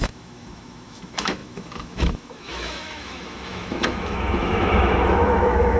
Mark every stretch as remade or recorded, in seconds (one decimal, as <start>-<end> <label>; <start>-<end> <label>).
0.0-5.8 remade